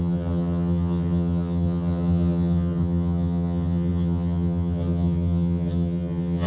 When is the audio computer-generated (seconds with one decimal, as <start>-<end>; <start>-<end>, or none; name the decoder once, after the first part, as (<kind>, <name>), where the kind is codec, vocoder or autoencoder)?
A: 0.0-6.5 (vocoder, HiFi-GAN)